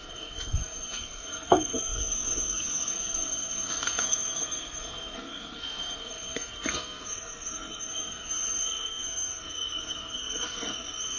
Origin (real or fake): fake